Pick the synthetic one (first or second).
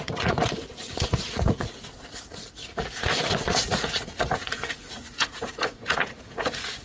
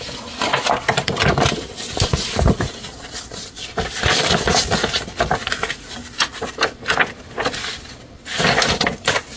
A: first